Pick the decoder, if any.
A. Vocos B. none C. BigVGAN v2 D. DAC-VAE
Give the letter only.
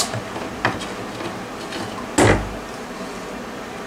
B